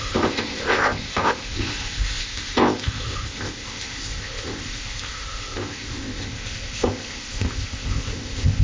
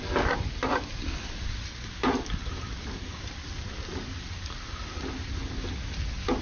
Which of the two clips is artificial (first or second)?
first